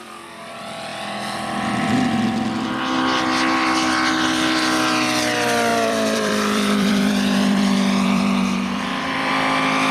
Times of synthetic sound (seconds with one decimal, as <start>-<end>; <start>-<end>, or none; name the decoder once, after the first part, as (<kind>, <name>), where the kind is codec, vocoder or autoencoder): 5.7-9.3 (vocoder, BigVGAN v2)